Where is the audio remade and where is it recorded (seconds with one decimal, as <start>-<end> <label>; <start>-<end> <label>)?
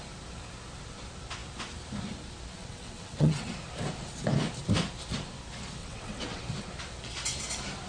0.0-2.6 recorded; 2.6-3.5 remade; 3.5-5.8 recorded; 5.8-6.4 remade; 6.4-7.9 recorded